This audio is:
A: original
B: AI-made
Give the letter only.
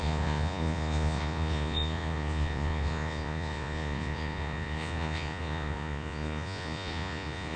B